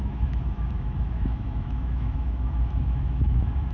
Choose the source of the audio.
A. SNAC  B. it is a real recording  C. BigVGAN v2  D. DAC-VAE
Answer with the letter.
D